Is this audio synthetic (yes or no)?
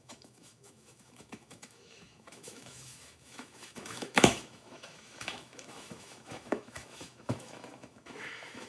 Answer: yes